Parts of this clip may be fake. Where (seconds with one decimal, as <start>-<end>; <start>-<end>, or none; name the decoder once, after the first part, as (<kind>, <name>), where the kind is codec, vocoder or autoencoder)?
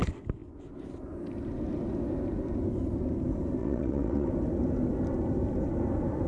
3.6-4.3 (vocoder, WaveNeXt)